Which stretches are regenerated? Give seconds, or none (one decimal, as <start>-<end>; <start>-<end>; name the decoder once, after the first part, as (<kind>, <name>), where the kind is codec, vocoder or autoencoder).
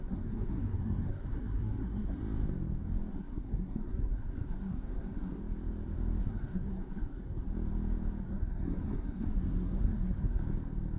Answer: 0.0-2.2 (codec, SNAC); 3.1-5.4; 6.2-7.5; 8.2-10.4